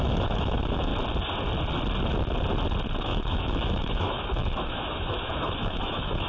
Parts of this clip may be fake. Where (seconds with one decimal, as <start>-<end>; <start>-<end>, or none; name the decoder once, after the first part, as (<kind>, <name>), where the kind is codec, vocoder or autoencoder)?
0.0-0.9 (autoencoder, DAC-VAE); 3.0-6.3